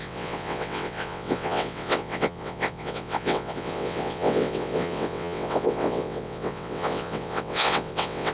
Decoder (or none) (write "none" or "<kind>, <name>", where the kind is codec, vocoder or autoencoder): vocoder, WaveNeXt